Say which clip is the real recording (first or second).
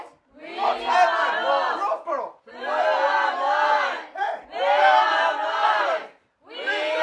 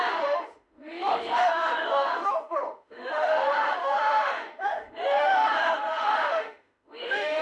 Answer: first